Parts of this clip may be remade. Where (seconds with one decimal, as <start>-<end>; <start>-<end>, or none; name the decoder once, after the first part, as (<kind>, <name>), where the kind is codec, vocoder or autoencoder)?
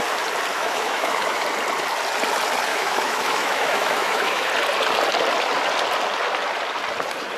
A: 0.5-1.4 (autoencoder, DAC-VAE); 2.7-4.5